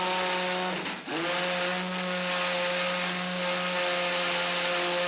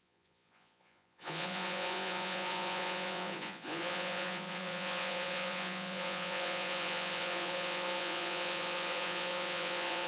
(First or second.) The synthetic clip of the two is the second